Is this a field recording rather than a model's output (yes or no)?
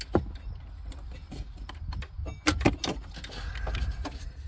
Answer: yes